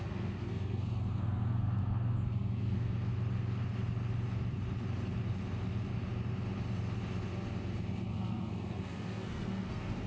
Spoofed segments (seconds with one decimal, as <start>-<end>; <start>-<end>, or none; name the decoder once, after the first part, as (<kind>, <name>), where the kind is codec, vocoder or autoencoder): 0.0-3.1 (codec, SNAC); 8.1-10.1